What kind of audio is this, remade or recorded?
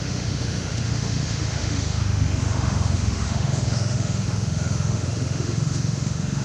remade